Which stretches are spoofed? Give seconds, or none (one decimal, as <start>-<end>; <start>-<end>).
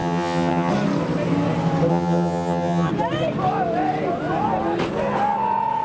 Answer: 0.0-0.7; 1.9-2.9